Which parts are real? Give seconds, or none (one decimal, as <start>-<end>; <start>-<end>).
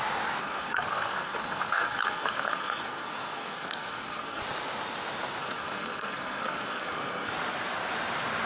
0.0-0.4; 4.4-5.4; 7.3-8.5